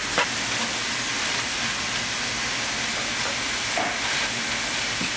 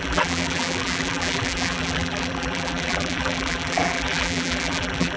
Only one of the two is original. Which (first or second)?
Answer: first